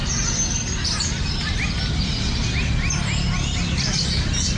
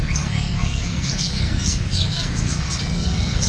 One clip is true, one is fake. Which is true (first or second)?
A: first